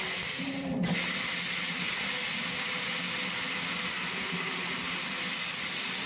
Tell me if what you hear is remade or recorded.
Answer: recorded